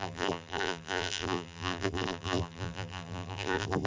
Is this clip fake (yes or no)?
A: yes